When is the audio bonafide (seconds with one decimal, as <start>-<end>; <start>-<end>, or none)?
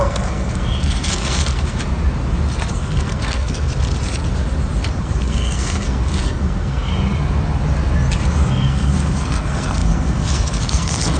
1.8-2.7; 3.7-5.0; 6.9-8.2